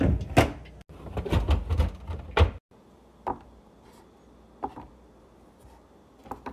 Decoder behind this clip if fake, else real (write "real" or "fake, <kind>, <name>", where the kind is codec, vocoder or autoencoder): real